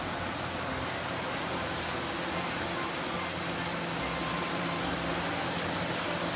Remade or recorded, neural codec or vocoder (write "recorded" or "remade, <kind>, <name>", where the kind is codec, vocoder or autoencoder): recorded